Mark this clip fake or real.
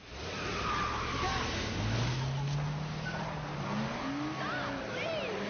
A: real